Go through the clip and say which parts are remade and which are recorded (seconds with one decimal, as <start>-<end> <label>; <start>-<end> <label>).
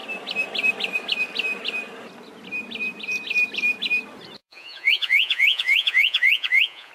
0.0-4.4 recorded; 4.4-6.9 remade